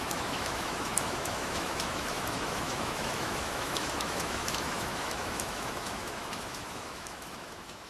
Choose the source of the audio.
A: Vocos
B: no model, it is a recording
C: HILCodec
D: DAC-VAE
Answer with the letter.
D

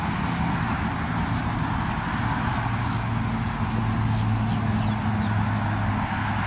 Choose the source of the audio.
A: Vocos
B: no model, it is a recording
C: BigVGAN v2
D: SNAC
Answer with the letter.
B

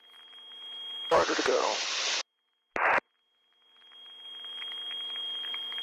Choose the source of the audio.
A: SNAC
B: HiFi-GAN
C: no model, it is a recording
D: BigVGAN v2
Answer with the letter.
C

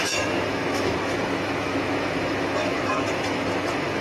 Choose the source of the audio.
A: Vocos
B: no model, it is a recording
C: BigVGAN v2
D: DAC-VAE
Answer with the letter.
D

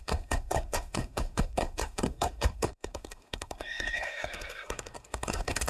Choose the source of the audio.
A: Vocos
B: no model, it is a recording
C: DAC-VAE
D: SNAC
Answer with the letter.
D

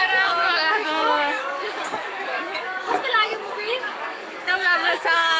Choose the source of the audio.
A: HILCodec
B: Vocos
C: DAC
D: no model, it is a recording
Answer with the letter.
C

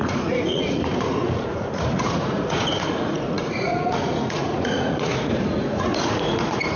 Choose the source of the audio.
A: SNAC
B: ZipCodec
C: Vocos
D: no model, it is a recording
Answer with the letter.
C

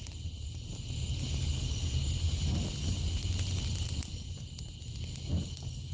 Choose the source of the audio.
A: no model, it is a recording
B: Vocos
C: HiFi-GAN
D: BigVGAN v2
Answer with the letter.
A